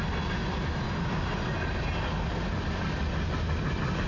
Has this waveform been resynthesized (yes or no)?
no